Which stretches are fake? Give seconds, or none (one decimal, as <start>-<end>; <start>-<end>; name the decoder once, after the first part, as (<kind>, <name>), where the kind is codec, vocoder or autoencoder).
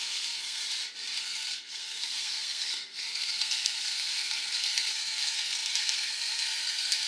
0.0-0.6 (codec, SNAC); 1.2-7.1